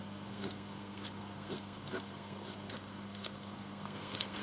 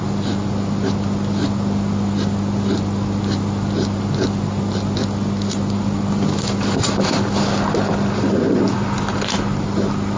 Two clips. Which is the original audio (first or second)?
second